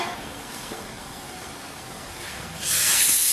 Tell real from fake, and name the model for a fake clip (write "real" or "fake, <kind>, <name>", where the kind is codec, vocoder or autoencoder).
fake, codec, SNAC